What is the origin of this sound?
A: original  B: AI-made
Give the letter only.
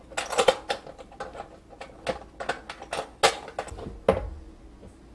A